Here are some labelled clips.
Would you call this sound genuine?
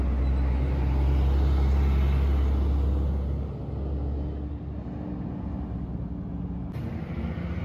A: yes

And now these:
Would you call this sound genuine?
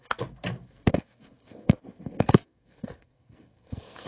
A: no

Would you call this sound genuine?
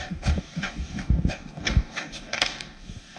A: no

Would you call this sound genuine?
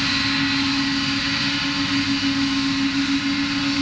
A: yes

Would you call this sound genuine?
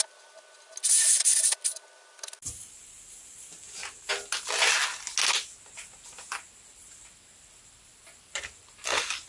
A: yes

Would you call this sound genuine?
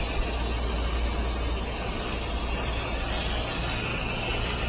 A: yes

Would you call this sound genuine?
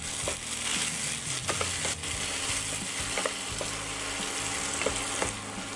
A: yes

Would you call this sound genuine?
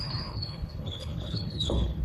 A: no